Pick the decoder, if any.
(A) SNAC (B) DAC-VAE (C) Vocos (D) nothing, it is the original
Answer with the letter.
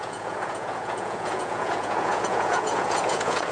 C